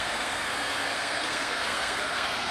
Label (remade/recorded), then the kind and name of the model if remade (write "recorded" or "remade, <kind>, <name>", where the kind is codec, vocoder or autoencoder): remade, codec, SNAC